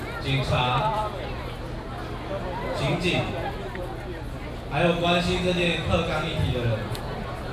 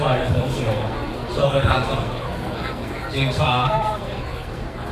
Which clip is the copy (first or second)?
second